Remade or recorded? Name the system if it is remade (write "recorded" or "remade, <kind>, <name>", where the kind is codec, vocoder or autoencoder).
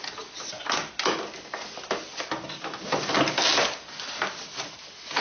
recorded